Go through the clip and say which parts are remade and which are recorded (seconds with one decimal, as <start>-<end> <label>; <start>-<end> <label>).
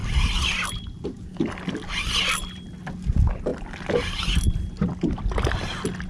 0.0-6.1 recorded